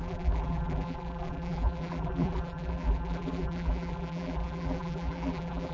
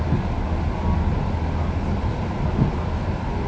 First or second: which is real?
second